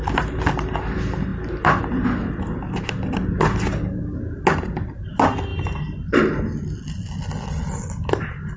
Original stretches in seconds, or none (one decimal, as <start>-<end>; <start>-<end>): 0.0-5.5; 6.2-8.6